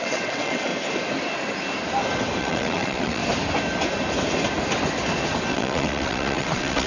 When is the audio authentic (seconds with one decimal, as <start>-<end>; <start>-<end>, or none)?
0.7-2.4; 3.2-5.5